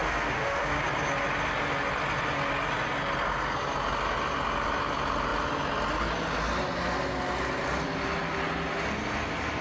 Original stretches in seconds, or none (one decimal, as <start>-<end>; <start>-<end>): 0.8-9.6